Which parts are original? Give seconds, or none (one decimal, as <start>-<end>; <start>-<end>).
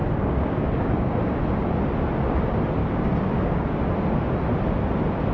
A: 1.2-2.8; 3.8-5.3